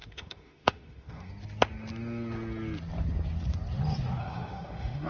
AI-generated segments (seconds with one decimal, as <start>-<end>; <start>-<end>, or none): 0.0-1.3; 4.2-5.1